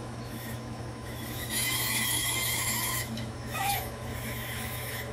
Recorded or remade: remade